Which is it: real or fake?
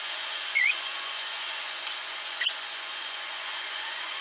fake